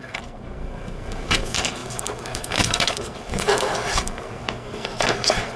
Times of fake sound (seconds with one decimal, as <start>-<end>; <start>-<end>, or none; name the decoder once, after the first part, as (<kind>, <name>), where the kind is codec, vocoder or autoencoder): 0.0-5.6 (codec, SNAC)